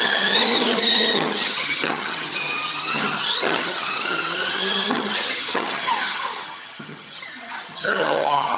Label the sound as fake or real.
fake